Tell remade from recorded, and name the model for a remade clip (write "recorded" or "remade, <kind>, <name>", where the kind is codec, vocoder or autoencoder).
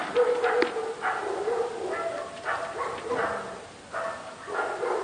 recorded